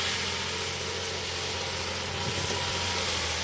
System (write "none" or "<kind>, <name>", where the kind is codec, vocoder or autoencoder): none